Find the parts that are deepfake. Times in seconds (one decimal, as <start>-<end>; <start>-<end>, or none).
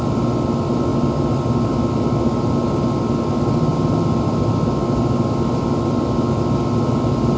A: none